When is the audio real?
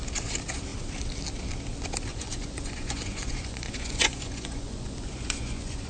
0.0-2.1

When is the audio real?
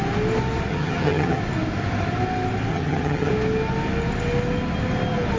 0.0-0.7; 1.4-2.7; 3.3-5.4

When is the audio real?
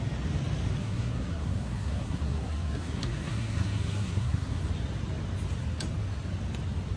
0.0-0.8; 4.7-7.0